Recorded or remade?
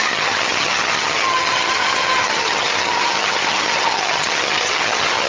remade